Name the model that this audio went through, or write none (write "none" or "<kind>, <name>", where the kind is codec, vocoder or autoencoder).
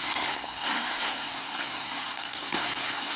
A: codec, SNAC